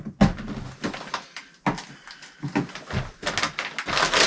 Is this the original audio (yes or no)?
yes